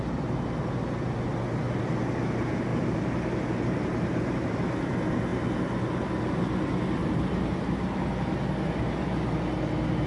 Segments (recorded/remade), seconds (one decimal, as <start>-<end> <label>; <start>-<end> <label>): 0.0-2.7 recorded; 2.7-4.6 remade; 4.6-7.0 recorded; 7.0-8.1 remade; 8.1-10.1 recorded